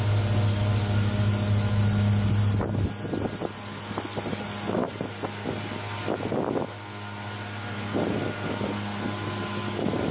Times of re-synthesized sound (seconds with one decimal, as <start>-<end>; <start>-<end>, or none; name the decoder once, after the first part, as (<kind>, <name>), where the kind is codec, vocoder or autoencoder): none